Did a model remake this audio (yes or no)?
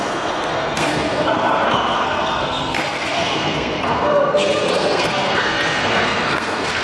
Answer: yes